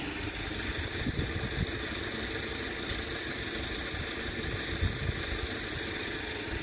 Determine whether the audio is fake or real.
real